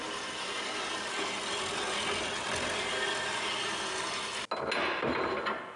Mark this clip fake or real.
real